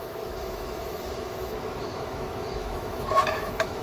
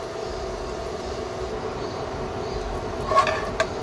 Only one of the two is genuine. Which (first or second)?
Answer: second